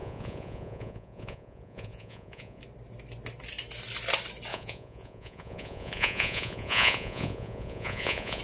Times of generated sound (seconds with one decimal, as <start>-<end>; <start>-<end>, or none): 0.0-2.6; 4.5-8.4

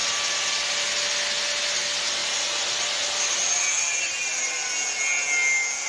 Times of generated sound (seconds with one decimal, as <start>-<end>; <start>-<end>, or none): none